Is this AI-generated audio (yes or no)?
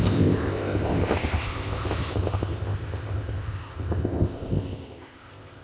yes